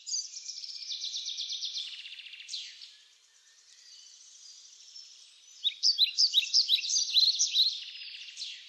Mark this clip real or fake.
fake